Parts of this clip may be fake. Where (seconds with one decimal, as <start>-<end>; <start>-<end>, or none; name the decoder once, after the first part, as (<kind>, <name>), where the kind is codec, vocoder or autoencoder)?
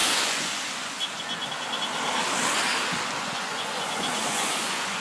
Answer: 0.0-1.4 (vocoder, Vocos); 3.2-5.0